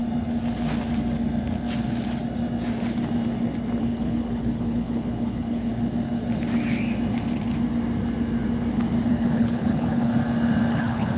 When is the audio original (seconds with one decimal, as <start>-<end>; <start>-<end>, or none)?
0.0-3.8; 5.7-9.1; 10.1-10.7